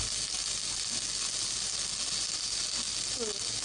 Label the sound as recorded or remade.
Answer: recorded